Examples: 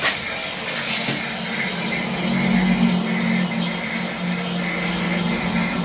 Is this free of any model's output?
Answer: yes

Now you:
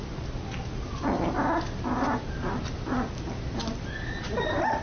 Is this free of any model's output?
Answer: yes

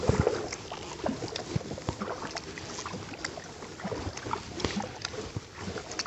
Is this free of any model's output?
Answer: yes